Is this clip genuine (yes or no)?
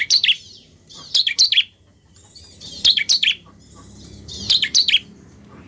no